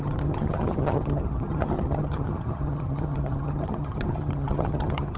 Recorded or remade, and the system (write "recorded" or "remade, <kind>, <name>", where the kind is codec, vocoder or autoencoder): remade, vocoder, HiFi-GAN